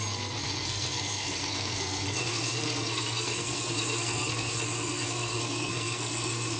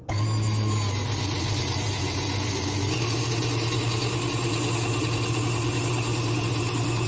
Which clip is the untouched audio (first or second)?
second